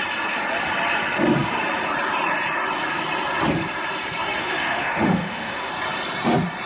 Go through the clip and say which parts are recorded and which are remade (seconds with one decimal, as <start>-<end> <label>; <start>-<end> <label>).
0.0-4.4 recorded; 4.4-5.7 remade; 5.7-6.7 recorded

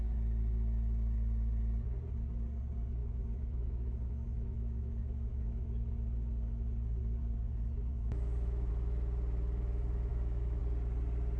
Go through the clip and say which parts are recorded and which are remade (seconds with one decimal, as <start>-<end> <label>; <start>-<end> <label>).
0.0-3.0 recorded; 3.0-5.9 remade; 5.9-7.9 recorded; 7.9-8.7 remade; 8.7-10.1 recorded; 10.1-10.6 remade; 10.6-11.4 recorded

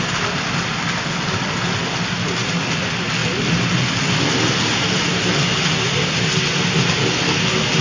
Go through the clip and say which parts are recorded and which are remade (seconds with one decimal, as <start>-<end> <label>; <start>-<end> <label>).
0.0-7.8 recorded

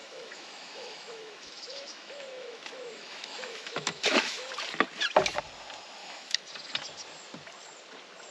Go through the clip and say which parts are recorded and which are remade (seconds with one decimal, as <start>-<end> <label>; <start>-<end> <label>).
0.0-4.5 remade; 4.5-6.0 recorded; 6.0-6.5 remade; 6.5-8.3 recorded